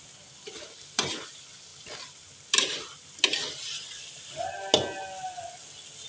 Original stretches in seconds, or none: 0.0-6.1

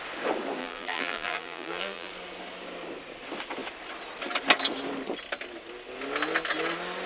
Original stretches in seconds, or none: 0.0-0.6; 2.1-7.1

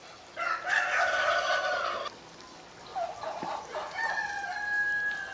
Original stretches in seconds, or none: 0.0-2.9; 4.4-5.3

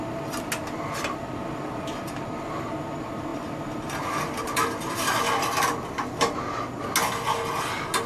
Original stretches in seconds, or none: 0.0-3.3; 5.2-8.1

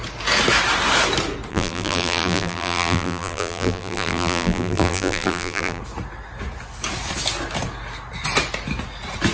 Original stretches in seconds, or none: 0.0-1.5; 5.8-9.3